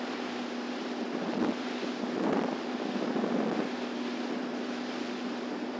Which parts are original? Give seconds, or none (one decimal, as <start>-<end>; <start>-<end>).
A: 0.0-5.8